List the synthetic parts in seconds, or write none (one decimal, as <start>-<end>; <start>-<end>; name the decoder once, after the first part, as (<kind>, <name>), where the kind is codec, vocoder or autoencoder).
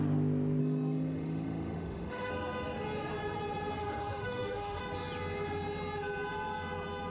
0.6-2.3 (autoencoder, DAC-VAE); 3.8-4.8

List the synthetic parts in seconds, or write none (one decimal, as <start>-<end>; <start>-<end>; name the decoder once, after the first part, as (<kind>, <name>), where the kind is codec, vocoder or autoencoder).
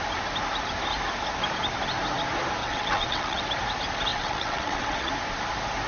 2.6-3.4 (vocoder, WaveNeXt); 4.1-5.1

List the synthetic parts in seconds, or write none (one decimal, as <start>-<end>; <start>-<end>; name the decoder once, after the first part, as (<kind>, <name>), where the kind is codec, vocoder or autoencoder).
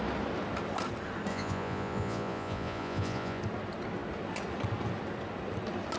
1.3-3.4 (vocoder, Vocos)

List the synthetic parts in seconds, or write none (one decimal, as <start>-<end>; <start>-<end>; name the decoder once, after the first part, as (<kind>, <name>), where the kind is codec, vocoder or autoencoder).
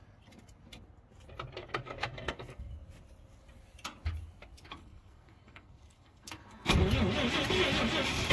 1.6-2.7 (codec, SNAC); 4.7-6.7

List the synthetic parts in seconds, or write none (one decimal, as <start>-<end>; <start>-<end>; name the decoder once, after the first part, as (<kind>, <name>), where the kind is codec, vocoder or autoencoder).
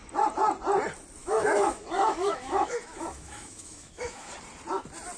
1.2-4.3 (autoencoder, DAC-VAE)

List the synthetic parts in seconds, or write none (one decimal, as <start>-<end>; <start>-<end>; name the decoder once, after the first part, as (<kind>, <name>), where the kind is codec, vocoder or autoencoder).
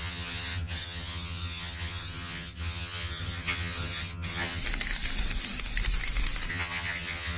0.0-4.6 (vocoder, HiFi-GAN); 6.5-7.4